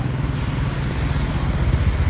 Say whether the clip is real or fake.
real